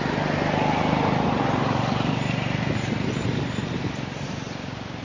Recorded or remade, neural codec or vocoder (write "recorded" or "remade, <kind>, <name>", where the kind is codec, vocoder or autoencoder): remade, vocoder, BigVGAN v2